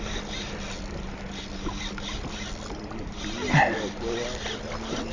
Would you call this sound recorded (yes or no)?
yes